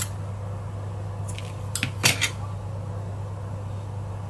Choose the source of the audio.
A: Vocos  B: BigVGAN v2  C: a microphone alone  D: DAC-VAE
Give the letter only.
C